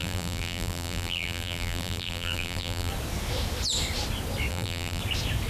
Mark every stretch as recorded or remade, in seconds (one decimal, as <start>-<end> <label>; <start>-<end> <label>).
0.0-2.9 remade; 2.9-4.5 recorded; 4.5-5.0 remade; 5.0-5.5 recorded